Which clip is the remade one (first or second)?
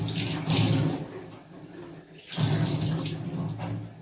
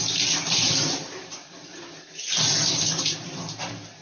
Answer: second